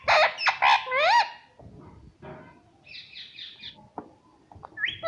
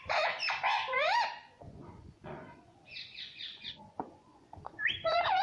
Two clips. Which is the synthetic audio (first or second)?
second